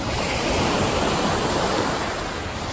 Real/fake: fake